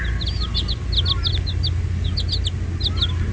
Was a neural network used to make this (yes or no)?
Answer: no